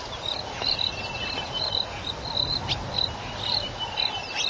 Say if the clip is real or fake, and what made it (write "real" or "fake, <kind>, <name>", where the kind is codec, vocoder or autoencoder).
real